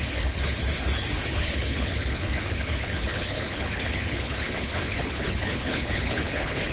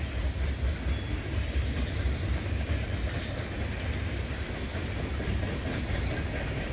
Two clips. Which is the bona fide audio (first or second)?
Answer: second